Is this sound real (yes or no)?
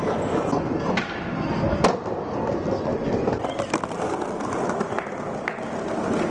yes